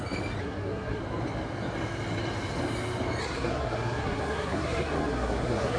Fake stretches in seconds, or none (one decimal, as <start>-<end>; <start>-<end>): 0.4-1.0; 3.2-5.8

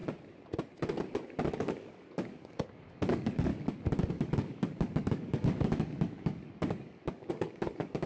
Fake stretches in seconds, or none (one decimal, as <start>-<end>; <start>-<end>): 1.5-3.5; 4.1-8.1

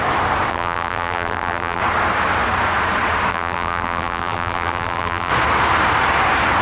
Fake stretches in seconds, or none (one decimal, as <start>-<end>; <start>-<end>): 0.5-1.8; 3.3-5.3

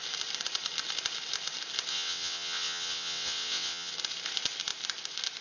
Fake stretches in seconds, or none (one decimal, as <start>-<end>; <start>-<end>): 1.9-3.9

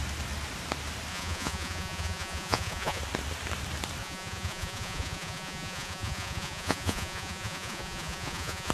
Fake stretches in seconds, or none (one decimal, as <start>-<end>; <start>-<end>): 1.1-3.0; 4.0-8.7

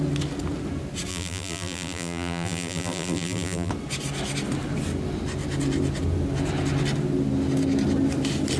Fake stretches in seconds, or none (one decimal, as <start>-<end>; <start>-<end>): 1.1-3.7

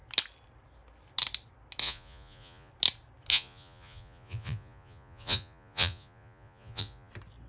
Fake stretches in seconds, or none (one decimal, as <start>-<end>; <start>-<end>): 1.8-2.7; 3.3-7.1